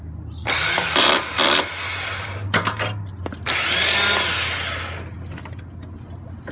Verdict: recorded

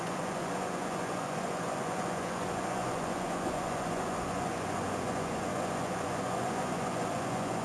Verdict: remade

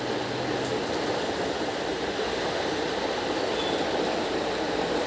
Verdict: recorded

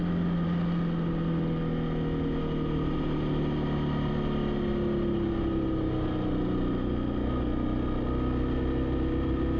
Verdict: recorded